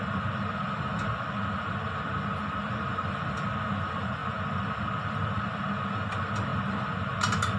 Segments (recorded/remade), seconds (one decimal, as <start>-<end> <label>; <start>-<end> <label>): 0.0-7.6 recorded